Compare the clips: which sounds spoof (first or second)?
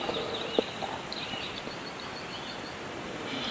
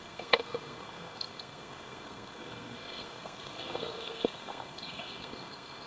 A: second